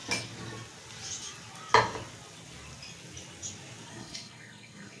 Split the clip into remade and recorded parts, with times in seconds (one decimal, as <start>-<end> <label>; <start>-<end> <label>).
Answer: 0.0-3.9 recorded; 3.9-5.0 remade